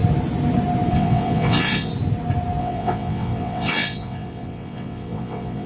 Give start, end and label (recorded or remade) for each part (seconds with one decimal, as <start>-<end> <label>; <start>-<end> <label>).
0.0-0.9 recorded; 0.9-1.9 remade; 1.9-2.6 recorded; 2.6-5.7 remade